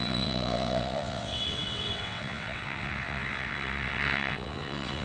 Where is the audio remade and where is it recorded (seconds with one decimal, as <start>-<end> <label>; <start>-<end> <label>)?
0.0-5.0 remade